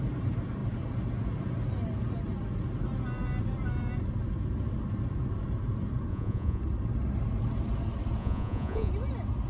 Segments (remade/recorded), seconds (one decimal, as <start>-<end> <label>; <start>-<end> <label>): 0.0-6.1 recorded; 6.1-6.6 remade; 6.6-8.2 recorded; 8.2-8.9 remade; 8.9-9.5 recorded